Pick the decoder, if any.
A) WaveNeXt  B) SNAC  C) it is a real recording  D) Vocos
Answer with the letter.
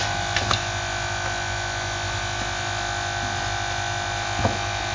C